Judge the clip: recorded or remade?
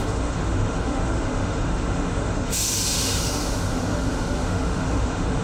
remade